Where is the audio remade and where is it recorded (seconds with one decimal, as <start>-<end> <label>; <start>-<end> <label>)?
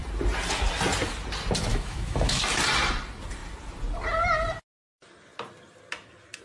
0.0-1.7 recorded; 1.7-2.4 remade; 2.4-6.4 recorded